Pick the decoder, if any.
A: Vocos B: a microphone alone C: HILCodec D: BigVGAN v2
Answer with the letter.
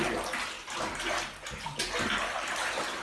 B